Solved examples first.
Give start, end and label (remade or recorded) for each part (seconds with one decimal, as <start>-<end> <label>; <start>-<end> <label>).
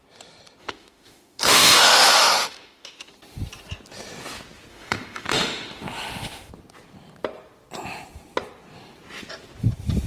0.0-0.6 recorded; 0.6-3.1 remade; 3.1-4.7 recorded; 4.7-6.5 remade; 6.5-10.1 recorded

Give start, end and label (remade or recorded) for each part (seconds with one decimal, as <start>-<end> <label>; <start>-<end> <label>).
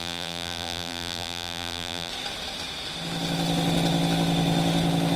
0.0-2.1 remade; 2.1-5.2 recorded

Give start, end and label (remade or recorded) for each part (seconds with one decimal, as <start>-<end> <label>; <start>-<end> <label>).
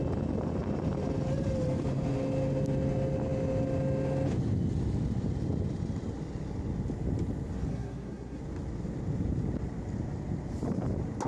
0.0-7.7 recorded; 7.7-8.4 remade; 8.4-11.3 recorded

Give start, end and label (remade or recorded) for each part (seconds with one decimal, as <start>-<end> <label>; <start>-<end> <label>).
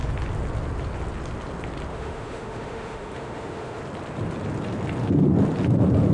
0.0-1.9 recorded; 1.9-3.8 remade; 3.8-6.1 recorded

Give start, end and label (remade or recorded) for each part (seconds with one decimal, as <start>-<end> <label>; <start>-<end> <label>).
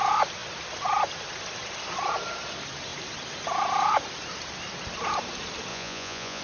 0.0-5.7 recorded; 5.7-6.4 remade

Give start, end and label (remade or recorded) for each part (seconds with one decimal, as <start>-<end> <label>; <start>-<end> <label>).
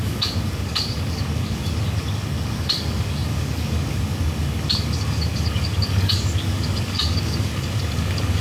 0.0-8.4 remade